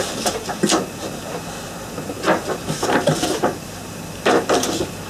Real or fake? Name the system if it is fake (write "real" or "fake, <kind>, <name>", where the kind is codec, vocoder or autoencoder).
fake, vocoder, BigVGAN v2